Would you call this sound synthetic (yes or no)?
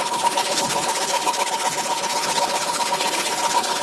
yes